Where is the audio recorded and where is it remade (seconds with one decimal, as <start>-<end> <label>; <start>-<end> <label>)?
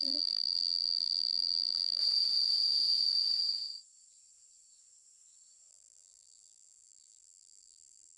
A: 0.0-2.0 remade; 2.0-5.7 recorded; 5.7-8.2 remade